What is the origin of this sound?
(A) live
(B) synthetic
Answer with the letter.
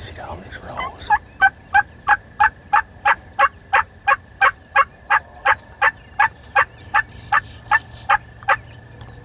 A